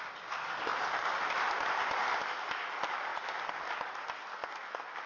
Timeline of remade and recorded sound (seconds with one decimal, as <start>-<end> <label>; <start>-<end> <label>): 0.0-0.7 recorded; 0.7-2.5 remade; 2.5-3.1 recorded; 3.1-4.0 remade; 4.0-5.1 recorded